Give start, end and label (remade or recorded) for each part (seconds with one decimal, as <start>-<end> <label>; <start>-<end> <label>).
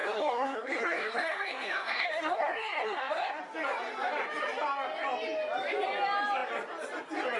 0.0-3.4 remade; 3.4-7.4 recorded